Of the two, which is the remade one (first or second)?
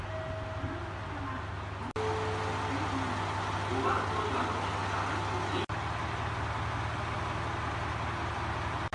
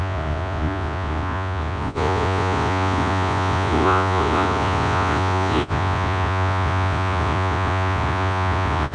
second